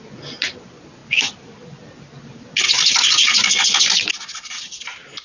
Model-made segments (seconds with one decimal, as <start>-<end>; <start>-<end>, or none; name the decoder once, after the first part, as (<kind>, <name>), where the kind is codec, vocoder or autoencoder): none